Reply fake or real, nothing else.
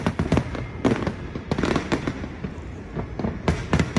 real